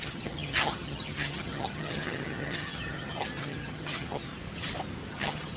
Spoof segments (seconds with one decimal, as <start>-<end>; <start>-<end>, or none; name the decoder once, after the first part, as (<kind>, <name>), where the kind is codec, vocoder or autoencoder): 0.0-4.3 (vocoder, HiFi-GAN); 5.1-5.6